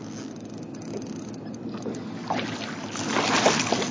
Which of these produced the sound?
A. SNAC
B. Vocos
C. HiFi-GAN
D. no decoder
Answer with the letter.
D